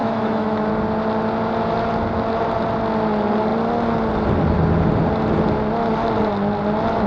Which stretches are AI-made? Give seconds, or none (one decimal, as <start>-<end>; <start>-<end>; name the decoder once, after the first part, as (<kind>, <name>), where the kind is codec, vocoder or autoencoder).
0.0-0.7 (autoencoder, DAC-VAE)